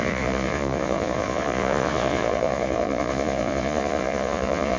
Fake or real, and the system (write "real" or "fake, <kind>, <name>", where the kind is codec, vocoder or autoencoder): fake, vocoder, Vocos